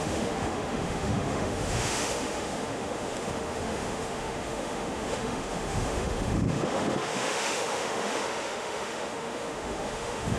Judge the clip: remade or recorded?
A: remade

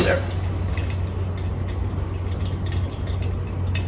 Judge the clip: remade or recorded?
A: recorded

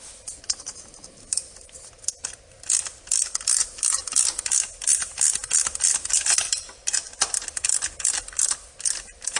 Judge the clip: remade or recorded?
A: recorded